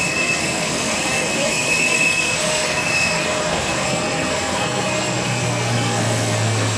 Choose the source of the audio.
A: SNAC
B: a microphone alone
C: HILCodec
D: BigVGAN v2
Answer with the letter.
A